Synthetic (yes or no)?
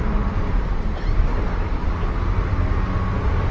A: no